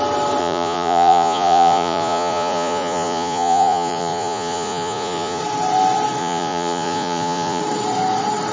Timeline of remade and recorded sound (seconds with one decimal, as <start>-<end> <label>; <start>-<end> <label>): 0.0-0.4 recorded; 0.4-5.4 remade; 5.4-6.2 recorded; 6.2-7.6 remade; 7.6-8.5 recorded